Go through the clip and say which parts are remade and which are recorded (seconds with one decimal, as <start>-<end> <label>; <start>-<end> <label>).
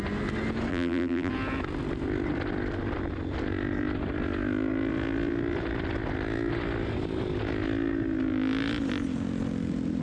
0.0-0.7 recorded; 0.7-1.3 remade; 1.3-10.0 recorded